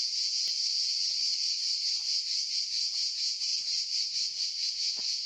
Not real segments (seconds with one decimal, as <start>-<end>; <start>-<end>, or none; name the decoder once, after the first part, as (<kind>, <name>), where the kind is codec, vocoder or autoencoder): 0.0-0.4 (vocoder, Vocos); 2.8-3.5; 4.7-5.3